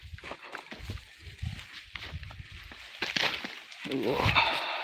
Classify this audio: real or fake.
real